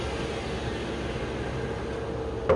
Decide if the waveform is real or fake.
real